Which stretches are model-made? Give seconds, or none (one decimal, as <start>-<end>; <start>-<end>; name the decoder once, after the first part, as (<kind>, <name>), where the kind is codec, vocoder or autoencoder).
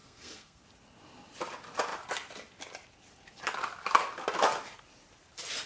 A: 0.0-0.6 (codec, SNAC)